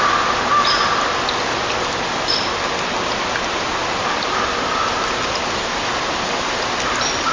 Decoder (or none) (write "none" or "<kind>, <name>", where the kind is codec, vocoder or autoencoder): none